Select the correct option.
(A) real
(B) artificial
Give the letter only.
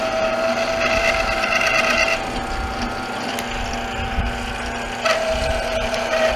A